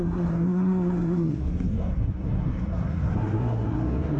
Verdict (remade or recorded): remade